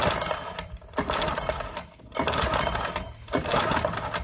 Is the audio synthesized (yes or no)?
no